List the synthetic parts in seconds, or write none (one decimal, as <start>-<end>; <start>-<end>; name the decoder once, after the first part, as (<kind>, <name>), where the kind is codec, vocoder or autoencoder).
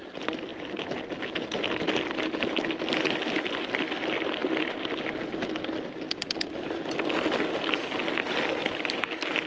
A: 0.5-1.0 (vocoder, BigVGAN v2); 8.6-9.1